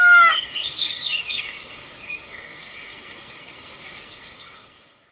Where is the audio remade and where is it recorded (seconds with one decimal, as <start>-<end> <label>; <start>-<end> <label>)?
0.0-5.1 remade